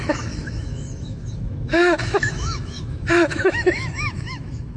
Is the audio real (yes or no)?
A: no